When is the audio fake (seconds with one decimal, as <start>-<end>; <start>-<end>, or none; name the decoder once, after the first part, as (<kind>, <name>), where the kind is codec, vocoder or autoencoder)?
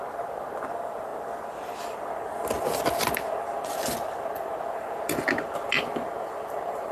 none